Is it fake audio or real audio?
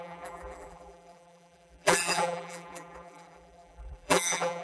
fake